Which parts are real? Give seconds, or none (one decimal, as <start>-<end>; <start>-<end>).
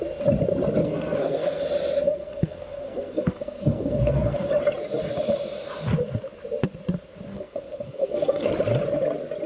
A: 0.0-0.8; 1.6-2.1; 4.5-7.3; 8.5-9.5